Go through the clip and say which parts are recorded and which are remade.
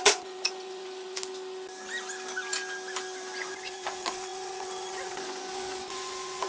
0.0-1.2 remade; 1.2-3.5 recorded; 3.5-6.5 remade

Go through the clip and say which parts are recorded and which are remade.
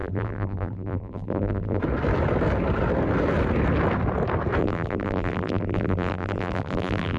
0.0-1.8 remade; 1.8-4.6 recorded; 4.6-7.2 remade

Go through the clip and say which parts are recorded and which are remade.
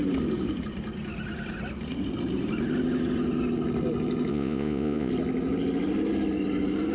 0.0-4.3 recorded; 4.3-5.1 remade; 5.1-6.9 recorded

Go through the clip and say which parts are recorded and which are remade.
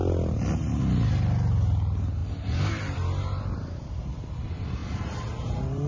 0.0-5.9 recorded